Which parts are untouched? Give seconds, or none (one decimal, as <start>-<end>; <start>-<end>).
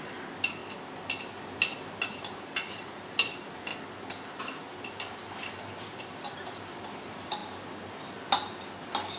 0.6-1.4; 3.7-6.0; 7.4-9.2